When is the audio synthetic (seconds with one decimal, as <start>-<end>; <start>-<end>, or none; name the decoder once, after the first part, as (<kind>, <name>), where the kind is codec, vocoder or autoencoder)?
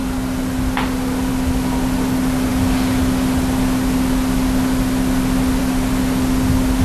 none